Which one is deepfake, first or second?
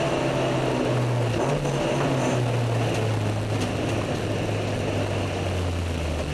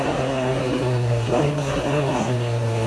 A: second